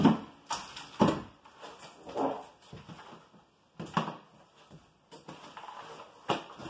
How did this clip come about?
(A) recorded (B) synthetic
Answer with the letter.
A